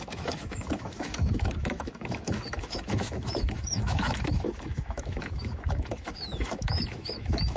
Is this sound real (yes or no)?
no